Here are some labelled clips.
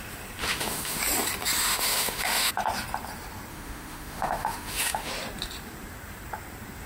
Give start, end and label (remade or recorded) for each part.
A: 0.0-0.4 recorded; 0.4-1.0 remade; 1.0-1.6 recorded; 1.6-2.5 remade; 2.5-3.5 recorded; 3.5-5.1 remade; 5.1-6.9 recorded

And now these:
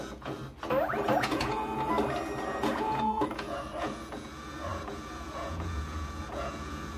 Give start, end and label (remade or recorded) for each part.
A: 0.0-0.4 remade; 0.4-1.2 recorded; 1.2-1.9 remade; 1.9-2.4 recorded; 2.4-7.0 remade

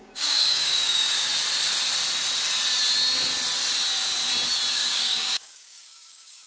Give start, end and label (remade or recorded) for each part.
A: 0.0-1.3 remade; 1.3-4.7 recorded; 4.7-6.5 remade

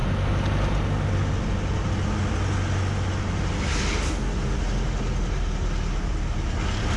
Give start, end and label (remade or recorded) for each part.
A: 0.0-7.0 recorded

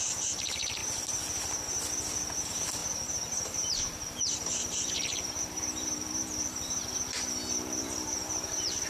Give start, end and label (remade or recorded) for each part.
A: 0.0-0.8 remade; 0.8-2.4 recorded; 2.4-8.9 remade

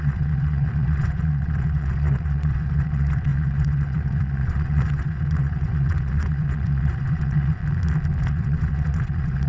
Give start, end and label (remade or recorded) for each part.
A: 0.0-7.6 remade; 7.6-8.2 recorded; 8.2-9.5 remade

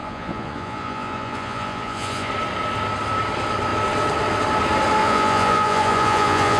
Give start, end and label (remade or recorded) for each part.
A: 0.0-2.3 remade; 2.3-5.0 recorded; 5.0-6.6 remade

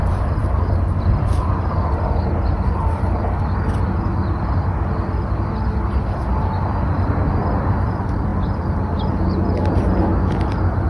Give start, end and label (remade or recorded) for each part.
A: 0.0-10.9 recorded